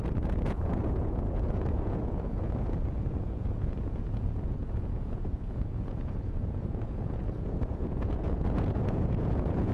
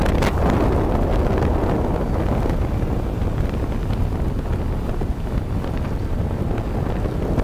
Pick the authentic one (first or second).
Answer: second